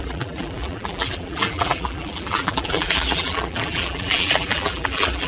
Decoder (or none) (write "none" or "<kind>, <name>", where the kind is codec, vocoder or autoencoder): vocoder, BigVGAN v2